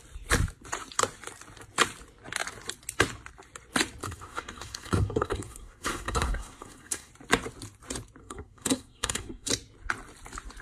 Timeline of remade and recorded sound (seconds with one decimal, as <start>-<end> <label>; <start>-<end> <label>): 0.0-4.0 recorded; 4.0-7.1 remade; 7.1-8.2 recorded; 8.2-9.5 remade; 9.5-10.6 recorded